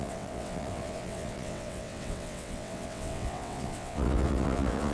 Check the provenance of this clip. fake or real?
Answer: fake